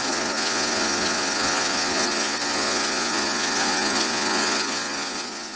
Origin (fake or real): fake